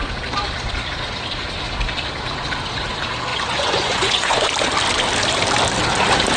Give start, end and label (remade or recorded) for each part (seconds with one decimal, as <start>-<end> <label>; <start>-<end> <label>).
0.0-3.3 recorded; 3.3-4.5 remade; 4.5-6.4 recorded